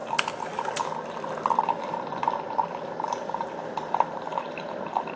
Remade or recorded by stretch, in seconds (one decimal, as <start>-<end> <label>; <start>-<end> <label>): 0.0-1.8 recorded; 1.8-5.2 remade